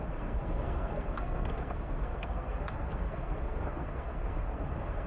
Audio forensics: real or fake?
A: fake